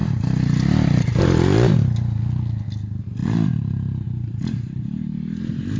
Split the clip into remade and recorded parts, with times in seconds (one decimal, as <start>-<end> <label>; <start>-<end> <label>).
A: 0.0-1.2 remade; 1.2-3.2 recorded; 3.2-5.8 remade